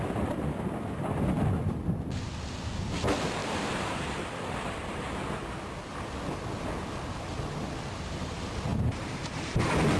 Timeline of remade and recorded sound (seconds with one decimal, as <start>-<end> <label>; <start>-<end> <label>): 0.0-3.4 recorded; 3.4-4.2 remade; 4.2-8.7 recorded; 8.7-9.6 remade; 9.6-10.0 recorded